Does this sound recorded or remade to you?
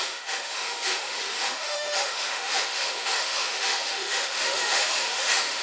remade